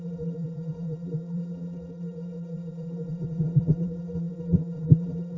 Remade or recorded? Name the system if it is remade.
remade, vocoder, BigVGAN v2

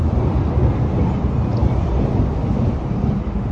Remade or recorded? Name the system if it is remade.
recorded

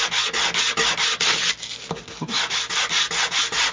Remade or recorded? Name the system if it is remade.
recorded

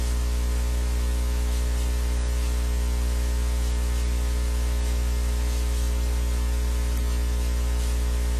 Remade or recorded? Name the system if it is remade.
recorded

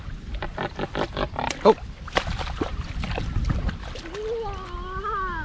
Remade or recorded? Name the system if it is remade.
recorded